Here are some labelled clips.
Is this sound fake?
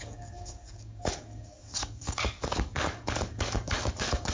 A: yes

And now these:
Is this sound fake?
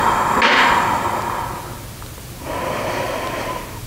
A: no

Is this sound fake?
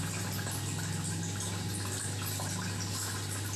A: no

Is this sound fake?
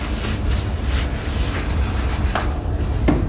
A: no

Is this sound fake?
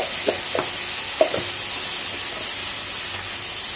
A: no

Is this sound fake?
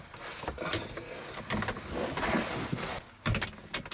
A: no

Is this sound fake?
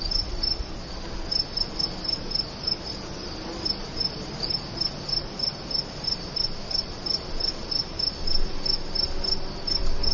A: no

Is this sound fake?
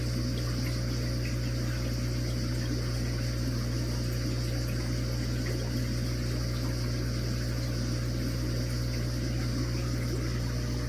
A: no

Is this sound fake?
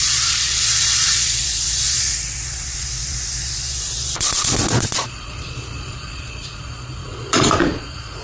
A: yes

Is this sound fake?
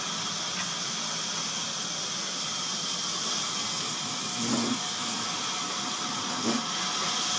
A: no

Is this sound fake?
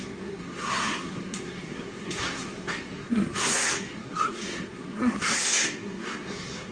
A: yes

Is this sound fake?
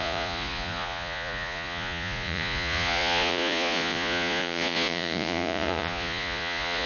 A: yes